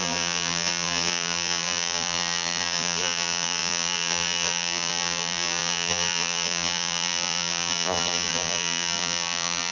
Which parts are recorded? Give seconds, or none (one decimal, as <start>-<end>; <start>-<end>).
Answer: none